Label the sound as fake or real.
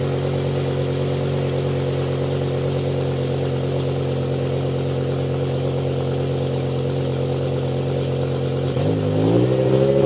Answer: real